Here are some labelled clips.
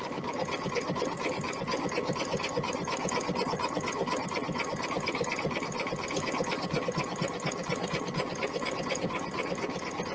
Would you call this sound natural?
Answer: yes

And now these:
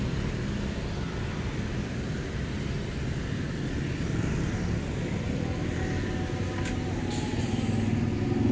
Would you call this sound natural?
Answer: yes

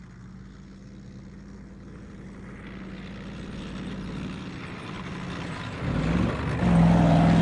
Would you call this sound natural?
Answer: yes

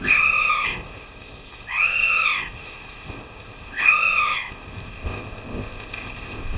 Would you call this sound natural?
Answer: no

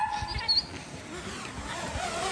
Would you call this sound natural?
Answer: yes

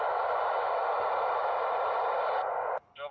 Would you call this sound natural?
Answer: yes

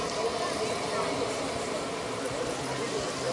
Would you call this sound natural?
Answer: yes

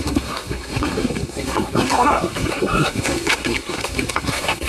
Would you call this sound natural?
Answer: no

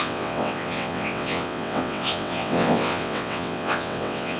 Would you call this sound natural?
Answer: no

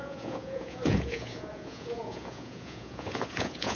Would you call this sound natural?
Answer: no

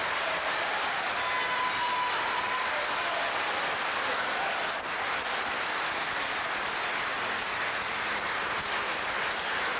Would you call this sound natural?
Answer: yes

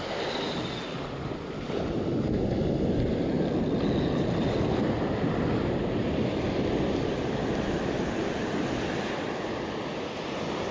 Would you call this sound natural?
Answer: yes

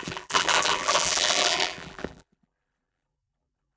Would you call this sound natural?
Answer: no